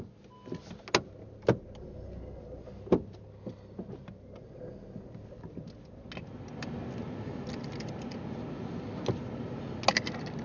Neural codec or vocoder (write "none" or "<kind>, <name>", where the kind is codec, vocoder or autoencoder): none